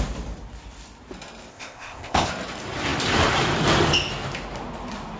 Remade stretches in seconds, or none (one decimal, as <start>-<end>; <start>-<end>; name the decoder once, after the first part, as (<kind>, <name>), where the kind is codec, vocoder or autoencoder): 1.5-2.3 (codec, ZipCodec)